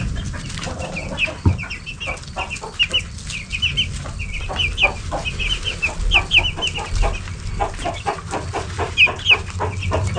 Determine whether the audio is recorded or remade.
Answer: recorded